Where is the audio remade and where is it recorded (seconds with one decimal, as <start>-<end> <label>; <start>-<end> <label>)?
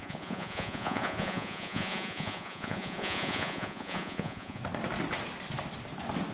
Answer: 0.0-4.6 remade; 4.6-6.3 recorded